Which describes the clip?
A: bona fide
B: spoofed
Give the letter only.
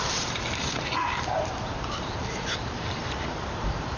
B